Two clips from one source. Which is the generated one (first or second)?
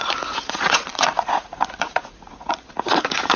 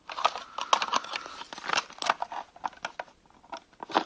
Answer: first